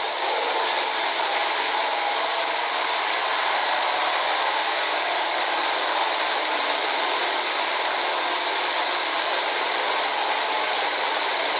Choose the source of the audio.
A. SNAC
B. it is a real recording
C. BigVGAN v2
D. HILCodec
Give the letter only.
B